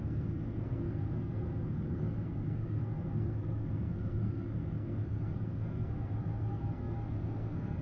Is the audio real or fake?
fake